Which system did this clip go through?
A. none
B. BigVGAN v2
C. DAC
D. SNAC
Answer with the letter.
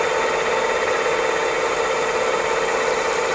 A